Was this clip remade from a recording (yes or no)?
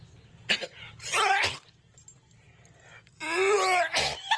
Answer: no